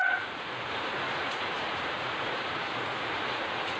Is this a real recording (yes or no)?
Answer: no